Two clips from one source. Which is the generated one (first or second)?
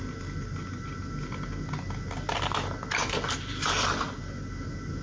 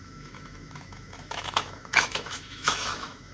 second